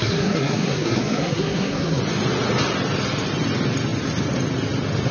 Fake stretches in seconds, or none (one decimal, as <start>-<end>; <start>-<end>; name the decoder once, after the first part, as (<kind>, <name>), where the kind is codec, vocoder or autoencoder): 0.0-2.0 (codec, SNAC)